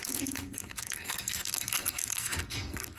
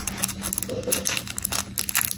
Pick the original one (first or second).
second